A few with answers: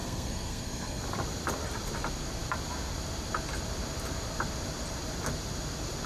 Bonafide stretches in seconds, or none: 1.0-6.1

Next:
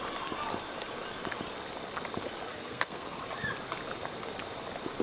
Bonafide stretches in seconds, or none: 0.0-2.5; 3.2-5.0

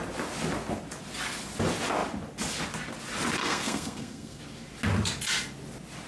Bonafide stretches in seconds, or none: 0.0-3.4; 4.4-6.1